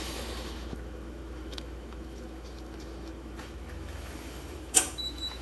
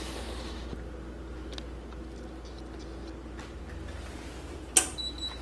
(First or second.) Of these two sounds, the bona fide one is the second